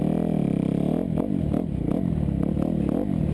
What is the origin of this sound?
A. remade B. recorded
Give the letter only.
B